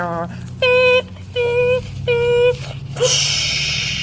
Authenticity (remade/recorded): recorded